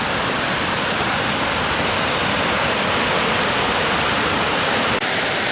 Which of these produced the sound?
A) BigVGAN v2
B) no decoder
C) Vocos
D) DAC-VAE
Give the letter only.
B